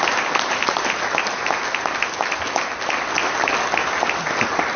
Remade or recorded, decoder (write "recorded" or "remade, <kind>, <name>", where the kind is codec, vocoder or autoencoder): recorded